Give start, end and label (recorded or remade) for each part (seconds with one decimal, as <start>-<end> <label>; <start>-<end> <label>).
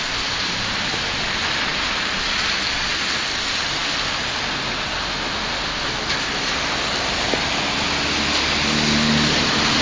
0.0-9.8 recorded